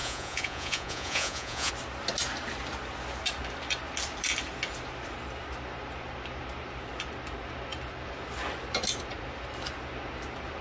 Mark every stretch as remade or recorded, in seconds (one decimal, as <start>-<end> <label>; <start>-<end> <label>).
0.0-1.7 remade; 1.7-10.6 recorded